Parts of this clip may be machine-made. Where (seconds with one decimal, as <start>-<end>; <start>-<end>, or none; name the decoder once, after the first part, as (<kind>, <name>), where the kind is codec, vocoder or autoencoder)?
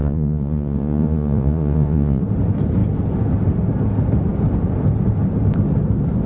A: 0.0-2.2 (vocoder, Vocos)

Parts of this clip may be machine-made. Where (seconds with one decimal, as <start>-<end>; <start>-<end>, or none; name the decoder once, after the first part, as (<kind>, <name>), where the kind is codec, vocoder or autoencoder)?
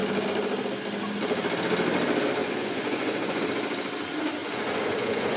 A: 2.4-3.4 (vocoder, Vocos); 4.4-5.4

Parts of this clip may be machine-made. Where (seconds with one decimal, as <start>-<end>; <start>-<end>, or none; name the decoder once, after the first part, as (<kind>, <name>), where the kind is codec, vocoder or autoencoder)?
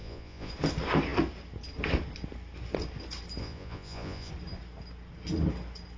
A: 0.0-0.5 (vocoder, Vocos); 3.4-4.3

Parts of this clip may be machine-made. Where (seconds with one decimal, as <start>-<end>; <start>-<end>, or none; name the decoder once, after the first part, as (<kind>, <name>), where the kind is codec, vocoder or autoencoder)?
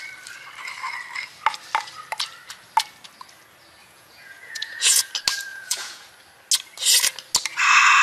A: 3.8-5.1 (vocoder, Vocos); 5.5-6.1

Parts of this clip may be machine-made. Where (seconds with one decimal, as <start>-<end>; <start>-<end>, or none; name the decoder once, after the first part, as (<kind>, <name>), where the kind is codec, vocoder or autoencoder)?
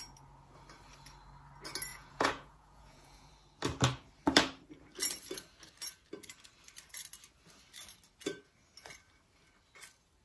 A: 1.9-3.3 (vocoder, Vocos)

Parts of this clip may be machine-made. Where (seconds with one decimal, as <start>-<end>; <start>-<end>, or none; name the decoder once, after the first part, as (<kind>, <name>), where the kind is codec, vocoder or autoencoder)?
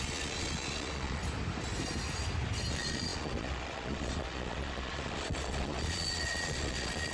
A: 0.0-1.2 (vocoder, Vocos); 2.7-7.1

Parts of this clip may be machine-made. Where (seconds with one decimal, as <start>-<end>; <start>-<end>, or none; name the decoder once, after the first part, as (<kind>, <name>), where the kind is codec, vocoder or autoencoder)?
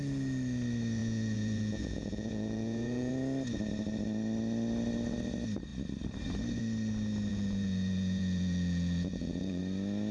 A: 1.0-3.1 (vocoder, Vocos); 7.3-9.6